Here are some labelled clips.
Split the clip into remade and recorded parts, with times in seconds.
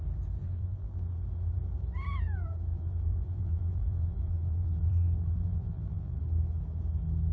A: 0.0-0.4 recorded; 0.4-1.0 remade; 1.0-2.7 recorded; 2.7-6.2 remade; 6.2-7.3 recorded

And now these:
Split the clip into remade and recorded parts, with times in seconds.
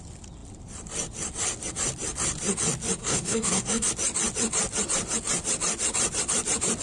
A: 0.0-3.0 recorded; 3.0-3.9 remade; 3.9-6.8 recorded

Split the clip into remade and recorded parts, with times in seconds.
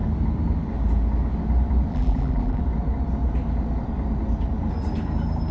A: 0.0-1.9 recorded; 1.9-2.6 remade; 2.6-5.5 recorded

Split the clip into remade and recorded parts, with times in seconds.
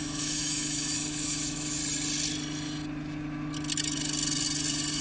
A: 0.0-1.8 remade; 1.8-5.0 recorded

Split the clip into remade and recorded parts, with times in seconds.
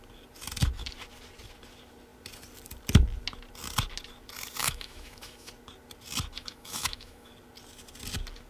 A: 0.0-4.6 recorded; 4.6-5.5 remade; 5.5-6.4 recorded; 6.4-7.3 remade; 7.3-8.5 recorded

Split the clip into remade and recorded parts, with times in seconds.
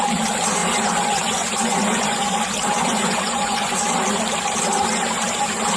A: 0.0-0.6 recorded; 0.6-2.4 remade; 2.4-2.8 recorded; 2.8-3.9 remade; 3.9-5.8 recorded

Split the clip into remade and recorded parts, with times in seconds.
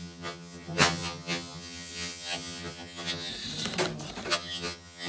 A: 0.0-3.3 remade; 3.3-4.3 recorded; 4.3-5.1 remade